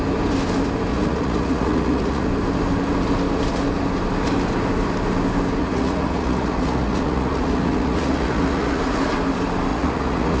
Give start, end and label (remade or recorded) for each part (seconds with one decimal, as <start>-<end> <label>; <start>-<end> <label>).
0.0-0.9 recorded; 0.9-2.3 remade; 2.3-5.6 recorded; 5.6-9.0 remade; 9.0-9.7 recorded; 9.7-10.4 remade